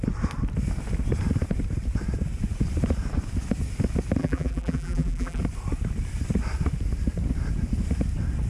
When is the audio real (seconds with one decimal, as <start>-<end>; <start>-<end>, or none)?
0.0-4.2; 5.4-8.5